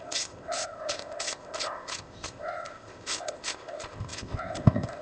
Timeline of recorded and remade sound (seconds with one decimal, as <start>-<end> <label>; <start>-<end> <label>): 0.0-5.0 remade